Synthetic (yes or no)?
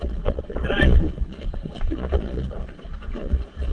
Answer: yes